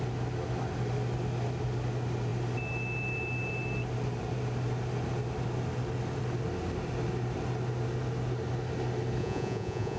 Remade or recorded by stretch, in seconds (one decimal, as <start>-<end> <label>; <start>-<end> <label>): 0.0-9.2 recorded; 9.2-10.0 remade